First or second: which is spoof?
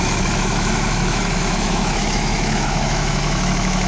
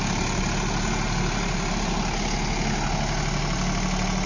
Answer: first